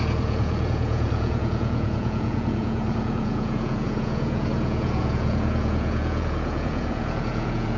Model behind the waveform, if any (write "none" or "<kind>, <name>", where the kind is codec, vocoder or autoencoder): vocoder, Vocos